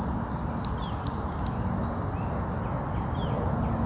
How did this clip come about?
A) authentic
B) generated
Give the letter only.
A